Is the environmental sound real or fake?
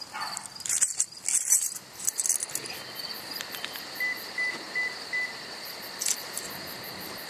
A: real